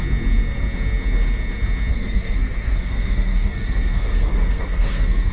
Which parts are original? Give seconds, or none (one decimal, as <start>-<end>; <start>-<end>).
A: 0.0-1.9